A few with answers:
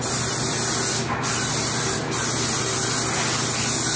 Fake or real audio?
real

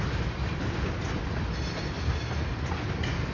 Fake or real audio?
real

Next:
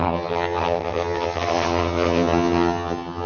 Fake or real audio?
fake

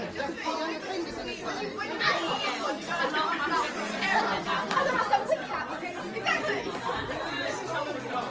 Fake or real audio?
real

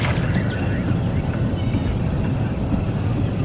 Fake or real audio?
real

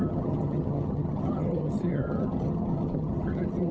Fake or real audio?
fake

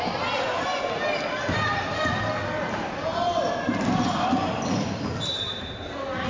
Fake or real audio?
real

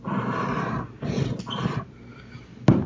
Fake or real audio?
real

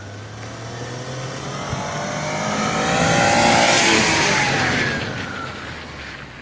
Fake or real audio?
real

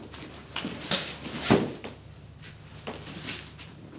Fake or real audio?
real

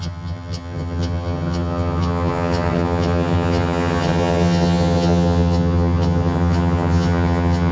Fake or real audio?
fake